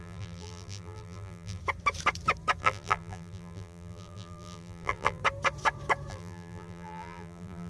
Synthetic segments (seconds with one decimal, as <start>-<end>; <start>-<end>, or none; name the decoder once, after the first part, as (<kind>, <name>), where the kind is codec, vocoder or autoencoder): 0.0-1.6 (vocoder, BigVGAN v2); 2.6-5.2; 6.1-7.7